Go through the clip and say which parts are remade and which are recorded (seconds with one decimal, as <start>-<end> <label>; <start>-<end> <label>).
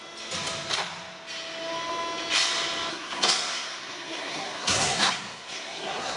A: 0.0-2.9 recorded; 2.9-6.2 remade